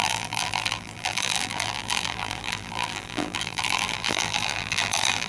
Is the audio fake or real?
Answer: fake